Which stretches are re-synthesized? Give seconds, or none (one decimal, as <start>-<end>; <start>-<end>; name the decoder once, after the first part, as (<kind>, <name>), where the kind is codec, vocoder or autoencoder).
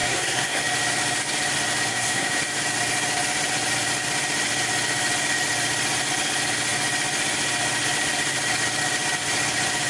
0.0-0.6 (codec, SNAC); 1.9-2.4